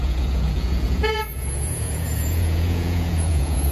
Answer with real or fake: fake